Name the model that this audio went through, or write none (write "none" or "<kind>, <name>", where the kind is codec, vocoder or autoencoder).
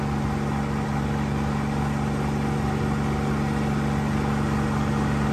none